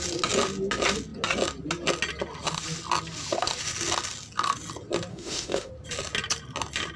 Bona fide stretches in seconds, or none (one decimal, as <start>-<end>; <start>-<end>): 0.0-5.1; 5.7-7.0